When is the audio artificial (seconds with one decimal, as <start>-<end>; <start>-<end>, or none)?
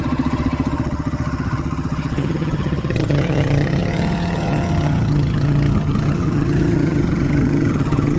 0.0-8.2